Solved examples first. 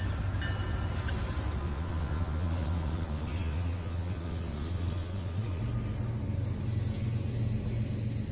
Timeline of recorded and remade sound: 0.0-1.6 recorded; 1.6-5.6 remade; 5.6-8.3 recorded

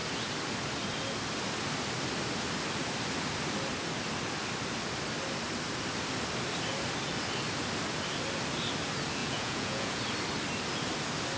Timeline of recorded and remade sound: 0.0-9.2 recorded; 9.2-10.0 remade; 10.0-11.4 recorded

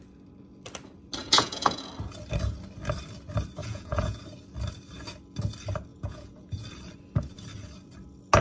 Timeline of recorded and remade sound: 0.0-1.2 recorded; 1.2-1.9 remade; 1.9-3.6 recorded; 3.6-4.2 remade; 4.2-5.9 recorded; 5.9-6.6 remade; 6.6-8.4 recorded

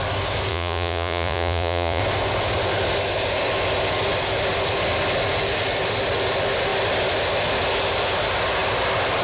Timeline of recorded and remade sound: 0.0-0.5 recorded; 0.5-2.0 remade; 2.0-9.2 recorded

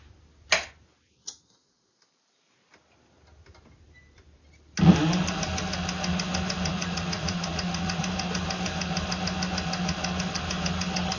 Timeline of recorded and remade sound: 0.0-6.7 recorded; 6.7-8.0 remade; 8.0-11.2 recorded